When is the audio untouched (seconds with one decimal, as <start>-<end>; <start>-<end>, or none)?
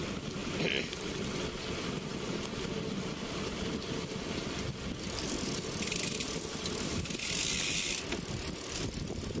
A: 0.0-0.4; 1.1-9.4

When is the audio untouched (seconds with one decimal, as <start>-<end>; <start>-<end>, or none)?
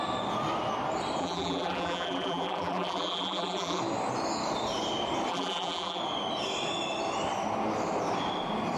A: 0.0-1.2; 3.8-5.3; 6.0-8.8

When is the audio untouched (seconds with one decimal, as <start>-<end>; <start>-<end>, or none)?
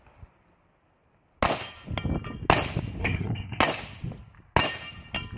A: 0.0-3.0; 3.6-5.4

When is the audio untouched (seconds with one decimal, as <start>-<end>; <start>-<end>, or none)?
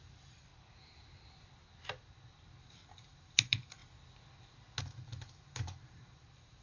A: 0.5-2.6; 3.8-4.8